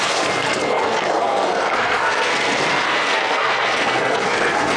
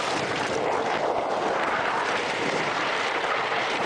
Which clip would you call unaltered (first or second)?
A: second